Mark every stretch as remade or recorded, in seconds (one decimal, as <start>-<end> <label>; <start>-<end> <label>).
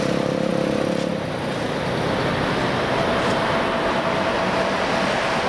0.0-5.5 recorded